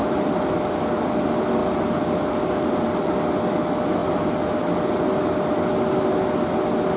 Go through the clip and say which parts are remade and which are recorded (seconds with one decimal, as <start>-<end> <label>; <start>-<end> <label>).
0.0-7.0 recorded

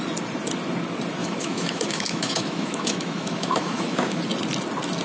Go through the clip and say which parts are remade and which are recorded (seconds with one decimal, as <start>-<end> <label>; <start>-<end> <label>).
0.0-1.2 recorded; 1.2-4.2 remade; 4.2-5.0 recorded

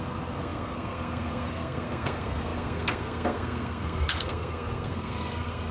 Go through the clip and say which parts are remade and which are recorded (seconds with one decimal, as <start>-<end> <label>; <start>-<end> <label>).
0.0-5.7 remade